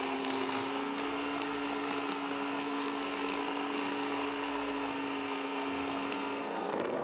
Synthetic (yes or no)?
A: yes